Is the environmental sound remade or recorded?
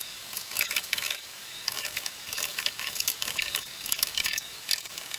remade